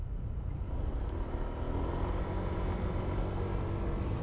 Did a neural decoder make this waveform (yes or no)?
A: no